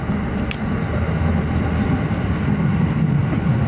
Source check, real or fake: real